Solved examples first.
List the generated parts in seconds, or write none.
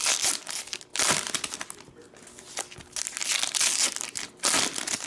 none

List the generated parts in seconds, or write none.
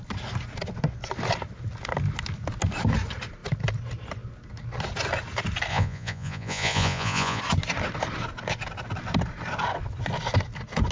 5.7-7.4 (vocoder, Vocos)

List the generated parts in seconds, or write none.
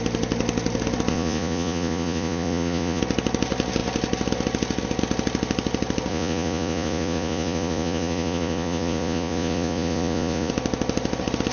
1.1-3.0 (vocoder, Vocos); 6.1-10.5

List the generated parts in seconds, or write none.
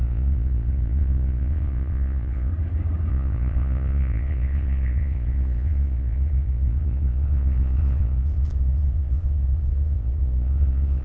0.0-2.5 (vocoder, Vocos); 3.1-11.0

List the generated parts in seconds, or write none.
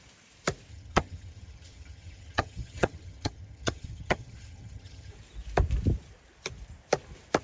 0.7-5.1 (vocoder, HiFi-GAN)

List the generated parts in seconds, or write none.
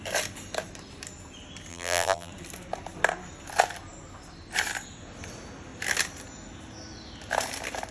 1.7-2.3 (vocoder, BigVGAN v2)